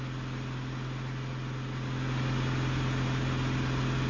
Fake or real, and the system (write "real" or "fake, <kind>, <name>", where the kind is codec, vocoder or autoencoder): real